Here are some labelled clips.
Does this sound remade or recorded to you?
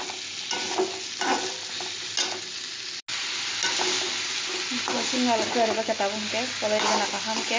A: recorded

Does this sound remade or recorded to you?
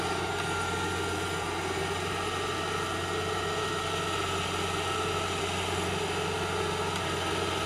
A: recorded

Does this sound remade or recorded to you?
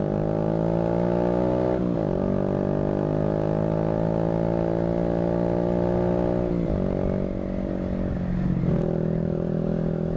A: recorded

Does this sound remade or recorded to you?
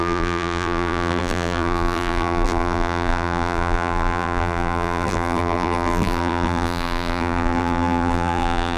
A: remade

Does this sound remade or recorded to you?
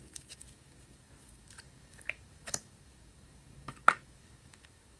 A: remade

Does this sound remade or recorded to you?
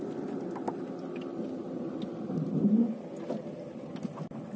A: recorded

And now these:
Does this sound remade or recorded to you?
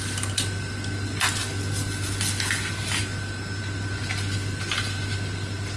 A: recorded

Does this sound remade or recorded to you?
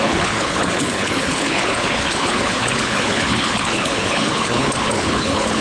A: remade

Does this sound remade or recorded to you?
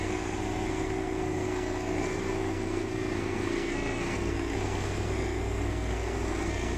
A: remade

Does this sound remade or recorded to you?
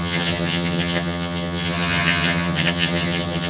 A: remade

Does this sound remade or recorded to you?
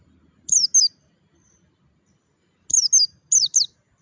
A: recorded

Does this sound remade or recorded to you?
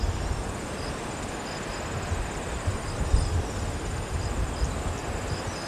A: recorded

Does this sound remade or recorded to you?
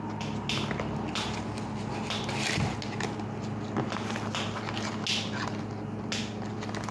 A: recorded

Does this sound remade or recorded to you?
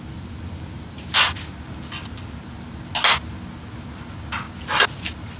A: recorded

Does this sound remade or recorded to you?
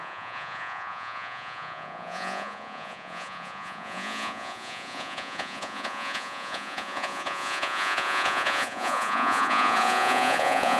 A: remade